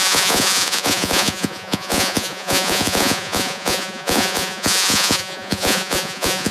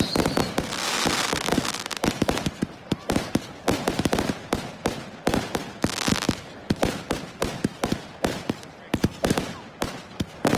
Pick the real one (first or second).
second